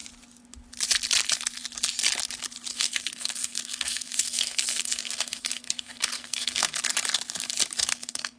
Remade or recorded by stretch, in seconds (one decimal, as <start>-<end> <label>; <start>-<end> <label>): 0.0-2.7 recorded; 2.7-6.8 remade; 6.8-7.9 recorded; 7.9-8.4 remade